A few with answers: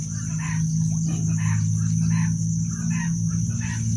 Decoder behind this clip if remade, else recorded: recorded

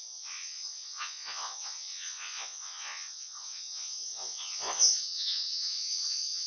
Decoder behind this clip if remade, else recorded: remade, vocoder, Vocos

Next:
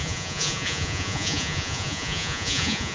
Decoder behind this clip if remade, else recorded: remade, vocoder, Vocos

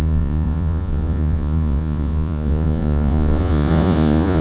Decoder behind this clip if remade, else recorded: remade, vocoder, Vocos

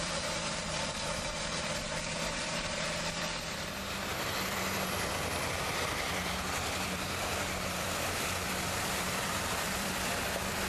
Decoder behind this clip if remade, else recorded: remade, vocoder, BigVGAN v2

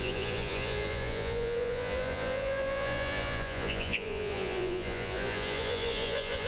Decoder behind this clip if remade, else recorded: remade, vocoder, Vocos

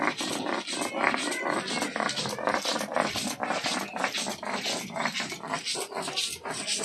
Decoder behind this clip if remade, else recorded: recorded